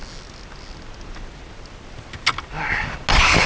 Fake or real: real